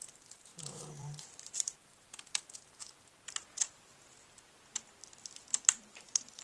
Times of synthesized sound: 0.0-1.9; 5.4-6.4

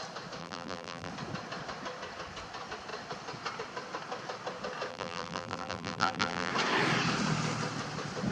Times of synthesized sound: 0.4-1.1; 4.9-6.5

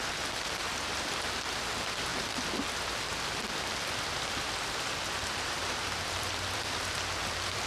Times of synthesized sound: 0.0-2.1; 3.9-7.7

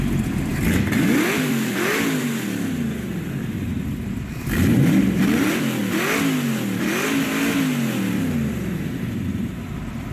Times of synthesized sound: 0.0-5.8; 8.0-10.1

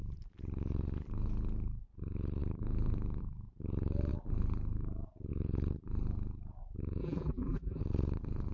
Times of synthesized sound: 7.0-7.8

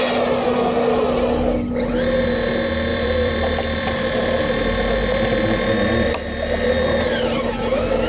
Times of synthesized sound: 2.9-4.4

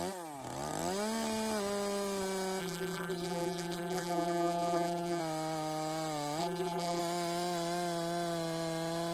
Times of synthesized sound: 2.6-5.2; 6.4-7.0

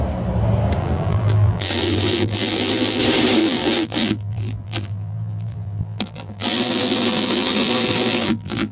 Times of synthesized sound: 0.8-3.0; 3.4-8.7